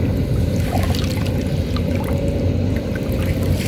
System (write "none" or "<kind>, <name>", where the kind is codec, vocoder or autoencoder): none